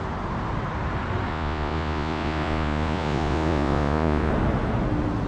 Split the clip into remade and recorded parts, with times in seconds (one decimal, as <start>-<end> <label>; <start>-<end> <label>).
0.0-1.3 recorded; 1.3-4.3 remade; 4.3-5.3 recorded